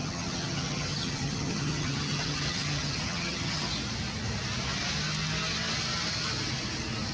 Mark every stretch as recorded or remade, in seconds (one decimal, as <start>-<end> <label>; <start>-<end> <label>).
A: 0.0-3.7 remade; 3.7-7.1 recorded